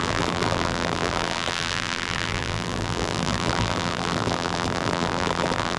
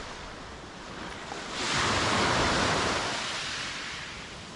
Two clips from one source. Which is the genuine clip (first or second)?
second